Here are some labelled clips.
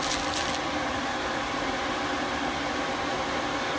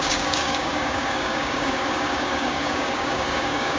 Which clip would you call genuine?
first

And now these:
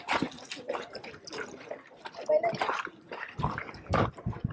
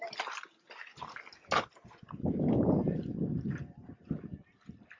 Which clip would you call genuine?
second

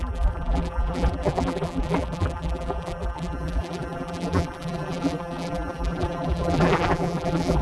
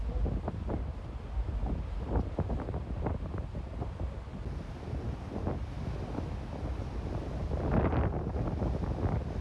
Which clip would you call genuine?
second